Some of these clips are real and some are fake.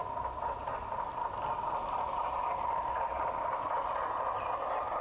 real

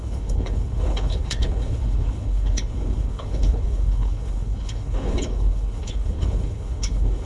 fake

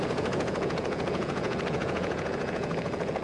fake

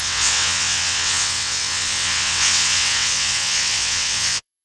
fake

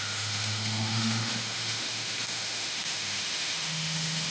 fake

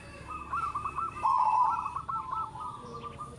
real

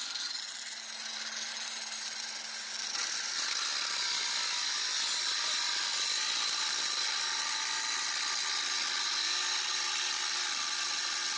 real